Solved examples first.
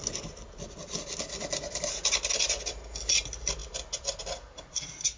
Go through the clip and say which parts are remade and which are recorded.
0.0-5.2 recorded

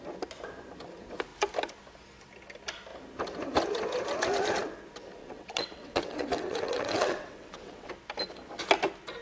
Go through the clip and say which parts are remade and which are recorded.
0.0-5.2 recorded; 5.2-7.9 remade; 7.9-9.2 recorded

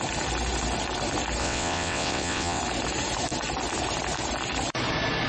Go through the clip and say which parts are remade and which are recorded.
0.0-1.4 recorded; 1.4-2.6 remade; 2.6-5.3 recorded